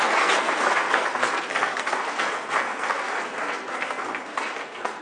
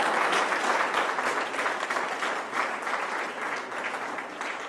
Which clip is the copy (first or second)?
first